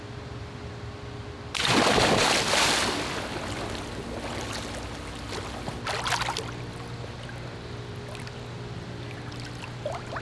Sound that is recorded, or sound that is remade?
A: recorded